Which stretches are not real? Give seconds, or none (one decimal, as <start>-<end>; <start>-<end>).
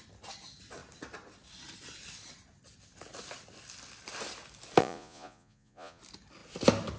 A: 4.8-6.0